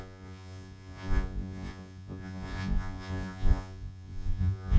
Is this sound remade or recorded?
remade